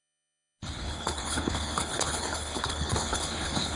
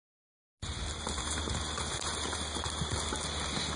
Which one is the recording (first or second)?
second